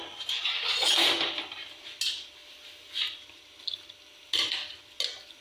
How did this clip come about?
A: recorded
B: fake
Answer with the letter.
A